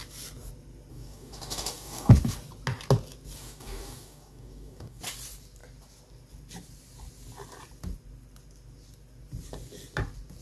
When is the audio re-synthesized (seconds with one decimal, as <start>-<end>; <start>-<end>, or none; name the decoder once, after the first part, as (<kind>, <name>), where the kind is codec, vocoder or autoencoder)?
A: 0.9-2.1 (codec, DAC); 3.4-5.0